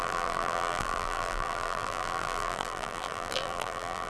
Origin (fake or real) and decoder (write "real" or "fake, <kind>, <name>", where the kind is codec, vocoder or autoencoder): fake, vocoder, BigVGAN v2